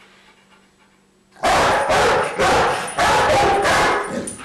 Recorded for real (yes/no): yes